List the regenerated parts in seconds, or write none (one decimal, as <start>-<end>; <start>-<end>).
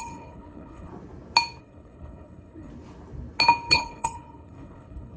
0.0-0.9; 1.6-2.7; 3.7-5.2